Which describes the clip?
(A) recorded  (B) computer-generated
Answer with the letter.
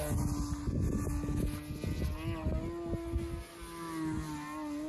A